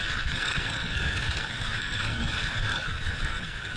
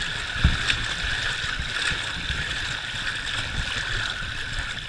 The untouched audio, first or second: second